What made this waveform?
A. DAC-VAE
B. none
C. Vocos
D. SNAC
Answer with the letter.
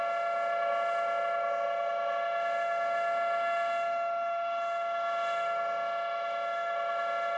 A